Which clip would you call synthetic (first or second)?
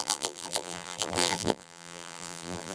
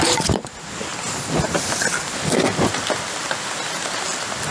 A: first